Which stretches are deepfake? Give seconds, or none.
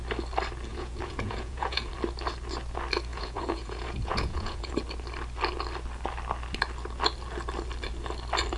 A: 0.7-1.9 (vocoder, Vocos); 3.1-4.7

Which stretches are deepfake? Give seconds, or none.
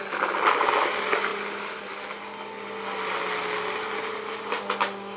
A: none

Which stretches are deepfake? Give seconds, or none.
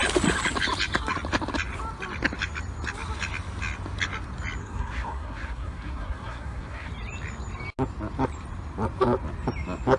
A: 4.6-6.9 (codec, SNAC)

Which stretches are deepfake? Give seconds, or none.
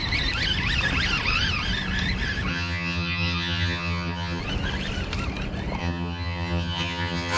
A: 2.5-4.4 (vocoder, HiFi-GAN); 5.8-7.4